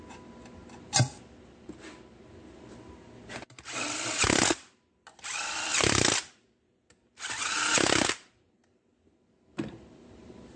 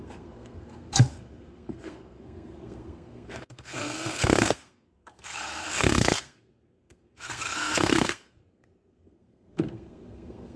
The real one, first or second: first